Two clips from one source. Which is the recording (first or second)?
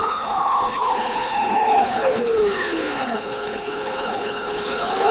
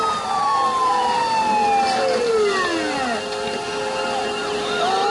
second